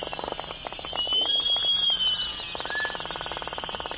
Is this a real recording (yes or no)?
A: yes